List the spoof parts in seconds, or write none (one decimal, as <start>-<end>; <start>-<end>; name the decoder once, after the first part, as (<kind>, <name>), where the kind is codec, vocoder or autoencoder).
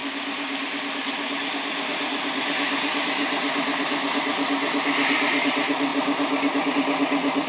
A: none